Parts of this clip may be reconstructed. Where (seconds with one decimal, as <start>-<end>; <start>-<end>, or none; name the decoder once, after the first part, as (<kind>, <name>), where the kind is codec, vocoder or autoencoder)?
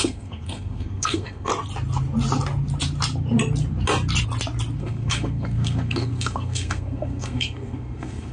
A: 0.0-1.5 (codec, SNAC); 4.8-8.3